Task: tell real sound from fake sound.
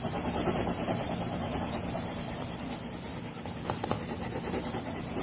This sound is real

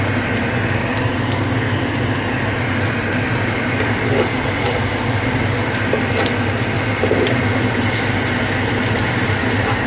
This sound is real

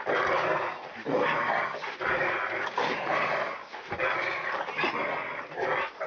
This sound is real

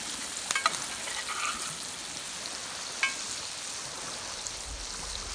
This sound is real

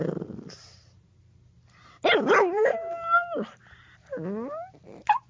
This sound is real